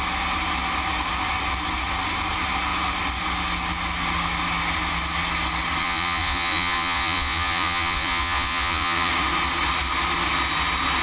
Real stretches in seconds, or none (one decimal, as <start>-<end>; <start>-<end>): 0.0-5.8; 9.1-11.0